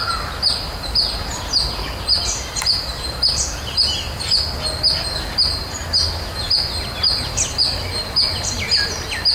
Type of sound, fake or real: real